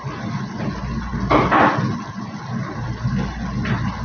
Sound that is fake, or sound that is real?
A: real